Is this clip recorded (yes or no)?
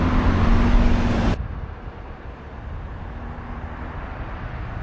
yes